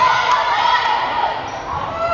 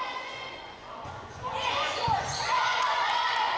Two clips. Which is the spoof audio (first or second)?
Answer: second